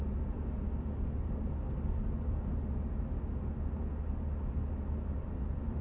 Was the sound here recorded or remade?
recorded